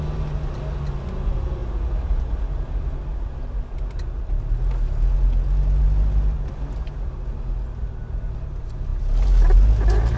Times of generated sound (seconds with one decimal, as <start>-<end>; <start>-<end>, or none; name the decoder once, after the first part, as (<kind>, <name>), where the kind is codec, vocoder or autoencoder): none

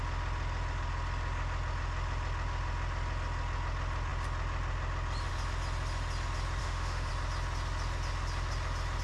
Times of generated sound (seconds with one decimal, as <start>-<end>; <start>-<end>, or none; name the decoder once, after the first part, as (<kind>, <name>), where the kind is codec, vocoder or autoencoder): 6.6-7.1 (autoencoder, DAC-VAE)

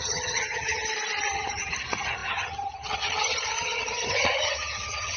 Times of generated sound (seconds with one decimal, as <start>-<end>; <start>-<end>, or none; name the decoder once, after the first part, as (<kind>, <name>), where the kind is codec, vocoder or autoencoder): 0.0-0.8 (vocoder, HiFi-GAN); 1.3-5.2

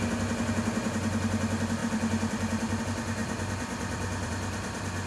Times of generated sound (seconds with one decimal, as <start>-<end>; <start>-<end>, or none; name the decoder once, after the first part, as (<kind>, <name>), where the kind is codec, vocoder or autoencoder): 1.8-2.8 (vocoder, BigVGAN v2); 3.2-4.3

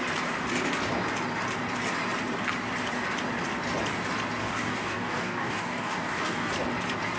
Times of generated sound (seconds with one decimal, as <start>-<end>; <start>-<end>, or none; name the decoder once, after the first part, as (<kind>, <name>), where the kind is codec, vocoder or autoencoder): 4.4-6.5 (codec, DAC)

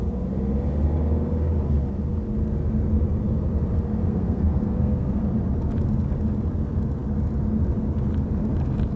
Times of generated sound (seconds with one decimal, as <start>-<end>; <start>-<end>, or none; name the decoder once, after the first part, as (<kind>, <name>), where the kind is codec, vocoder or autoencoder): 4.0-5.2 (codec, SNAC)

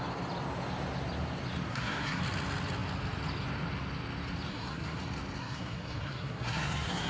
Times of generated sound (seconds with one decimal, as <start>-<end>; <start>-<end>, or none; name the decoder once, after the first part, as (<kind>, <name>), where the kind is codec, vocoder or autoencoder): 1.7-2.2 (codec, SNAC); 4.5-5.0; 5.4-7.1

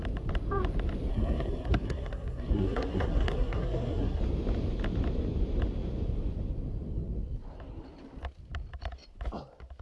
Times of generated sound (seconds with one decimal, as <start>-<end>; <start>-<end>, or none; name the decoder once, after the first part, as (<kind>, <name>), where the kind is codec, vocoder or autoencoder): 1.1-4.2 (codec, SNAC)